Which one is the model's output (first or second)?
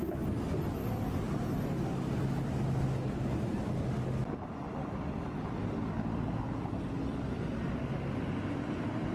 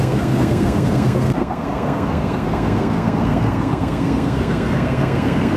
second